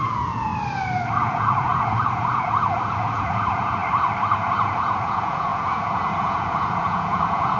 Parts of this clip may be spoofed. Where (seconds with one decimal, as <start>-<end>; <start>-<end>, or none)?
0.0-0.5; 1.2-3.8; 4.4-7.6